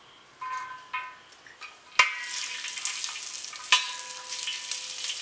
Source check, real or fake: real